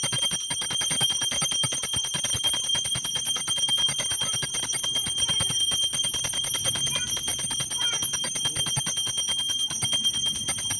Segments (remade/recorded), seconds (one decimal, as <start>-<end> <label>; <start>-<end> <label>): 0.0-7.3 remade; 7.3-10.8 recorded